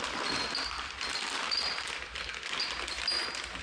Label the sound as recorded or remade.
recorded